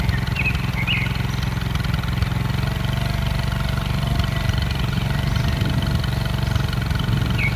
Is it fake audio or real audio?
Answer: real